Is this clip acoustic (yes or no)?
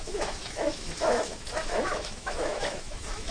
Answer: no